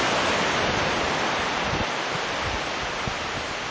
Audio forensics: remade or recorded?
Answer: recorded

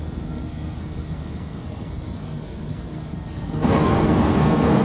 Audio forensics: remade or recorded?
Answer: remade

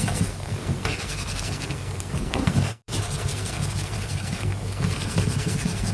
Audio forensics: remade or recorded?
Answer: remade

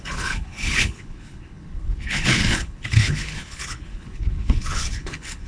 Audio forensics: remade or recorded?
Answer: remade